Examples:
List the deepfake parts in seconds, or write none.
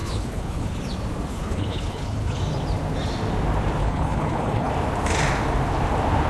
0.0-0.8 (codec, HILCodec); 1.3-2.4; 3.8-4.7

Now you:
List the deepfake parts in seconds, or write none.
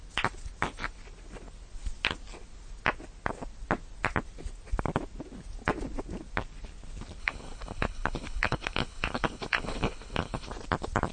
7.2-10.5 (codec, HILCodec)